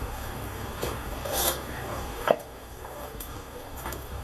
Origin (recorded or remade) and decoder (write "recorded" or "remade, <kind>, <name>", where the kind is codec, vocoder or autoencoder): remade, codec, DAC